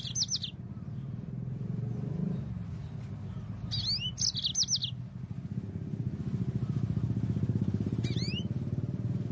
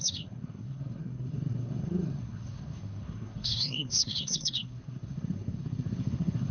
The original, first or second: first